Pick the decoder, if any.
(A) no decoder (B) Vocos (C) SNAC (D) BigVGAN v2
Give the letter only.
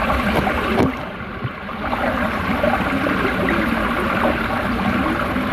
D